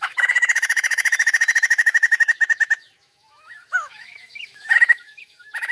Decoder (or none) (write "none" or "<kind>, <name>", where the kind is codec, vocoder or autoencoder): autoencoder, DAC-VAE